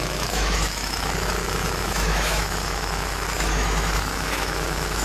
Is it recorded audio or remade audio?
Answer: remade